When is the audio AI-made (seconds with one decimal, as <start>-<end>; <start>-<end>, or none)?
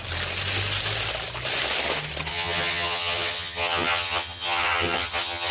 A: 2.3-5.5